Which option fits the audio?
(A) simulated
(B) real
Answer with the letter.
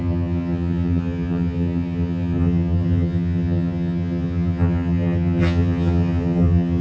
A